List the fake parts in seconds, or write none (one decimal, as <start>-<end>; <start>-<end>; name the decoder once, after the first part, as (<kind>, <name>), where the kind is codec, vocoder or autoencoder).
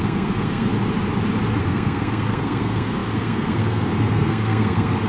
0.0-0.7 (codec, SNAC); 1.6-5.1